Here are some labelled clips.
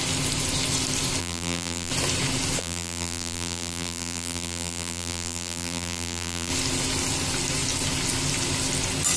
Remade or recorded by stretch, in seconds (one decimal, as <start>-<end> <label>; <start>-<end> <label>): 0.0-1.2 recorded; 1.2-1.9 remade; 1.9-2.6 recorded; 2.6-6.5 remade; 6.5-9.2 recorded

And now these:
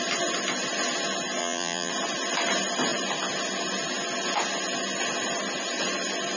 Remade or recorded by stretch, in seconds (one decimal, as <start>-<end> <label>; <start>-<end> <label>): 0.0-1.4 recorded; 1.4-1.9 remade; 1.9-6.4 recorded

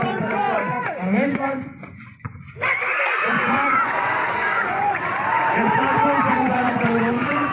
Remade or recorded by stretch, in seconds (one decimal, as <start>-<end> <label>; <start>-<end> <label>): 0.0-7.5 remade

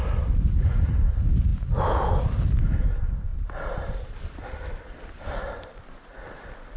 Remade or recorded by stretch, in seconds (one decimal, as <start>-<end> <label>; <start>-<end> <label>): 0.0-3.3 recorded; 3.3-5.0 remade; 5.0-6.8 recorded

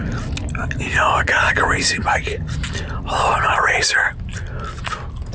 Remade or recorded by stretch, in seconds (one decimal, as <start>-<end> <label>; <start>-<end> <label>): 0.0-5.3 recorded

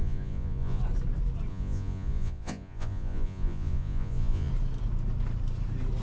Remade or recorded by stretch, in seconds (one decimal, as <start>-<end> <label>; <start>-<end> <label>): 0.0-0.8 remade; 0.8-1.5 recorded; 1.5-4.5 remade; 4.5-6.0 recorded